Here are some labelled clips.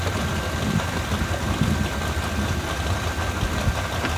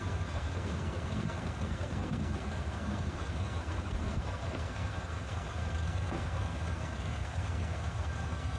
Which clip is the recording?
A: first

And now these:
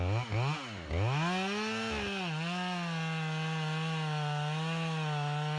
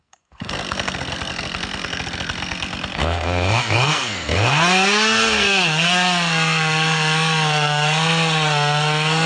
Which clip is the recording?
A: first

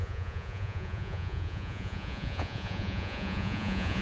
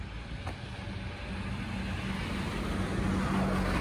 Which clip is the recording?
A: second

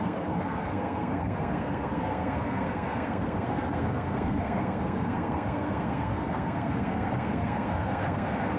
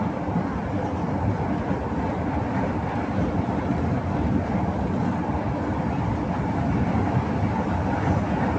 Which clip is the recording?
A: second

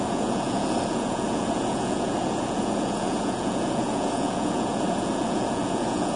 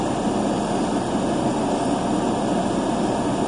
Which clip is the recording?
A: second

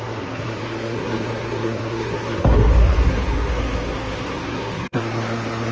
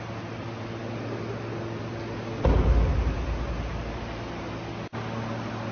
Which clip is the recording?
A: second